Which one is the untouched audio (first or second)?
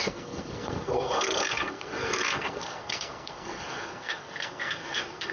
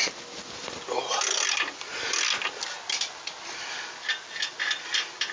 second